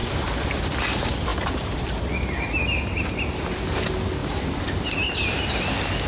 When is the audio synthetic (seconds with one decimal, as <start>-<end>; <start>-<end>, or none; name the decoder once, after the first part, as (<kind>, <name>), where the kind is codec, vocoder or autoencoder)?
none